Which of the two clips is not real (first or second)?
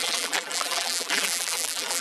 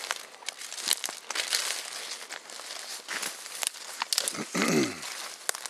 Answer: first